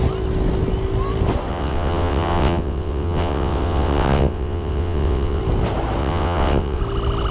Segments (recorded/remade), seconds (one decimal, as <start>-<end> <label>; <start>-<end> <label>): 0.0-1.5 recorded; 1.5-5.4 remade; 5.4-6.0 recorded; 6.0-6.8 remade; 6.8-7.3 recorded